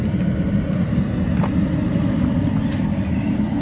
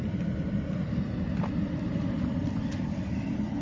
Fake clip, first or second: second